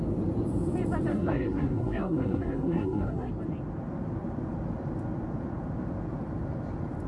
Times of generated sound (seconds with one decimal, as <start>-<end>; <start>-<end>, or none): 1.1-3.3